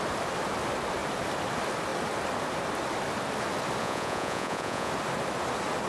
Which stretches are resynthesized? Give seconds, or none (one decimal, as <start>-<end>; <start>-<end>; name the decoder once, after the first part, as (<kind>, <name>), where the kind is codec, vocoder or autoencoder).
3.8-4.9 (vocoder, Vocos)